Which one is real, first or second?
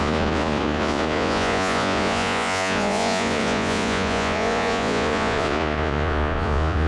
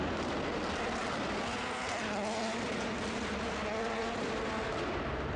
second